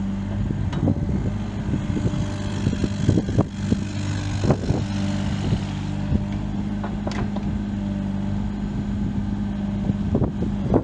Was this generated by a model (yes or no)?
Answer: no